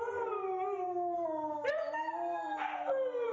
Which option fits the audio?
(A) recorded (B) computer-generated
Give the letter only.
B